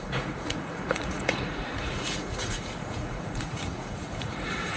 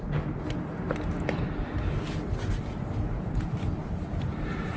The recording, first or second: second